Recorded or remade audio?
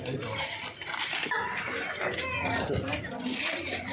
recorded